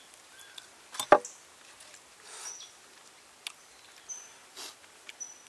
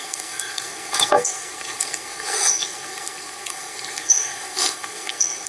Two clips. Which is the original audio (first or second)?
first